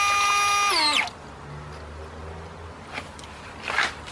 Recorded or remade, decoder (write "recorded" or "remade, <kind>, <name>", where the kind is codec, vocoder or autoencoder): recorded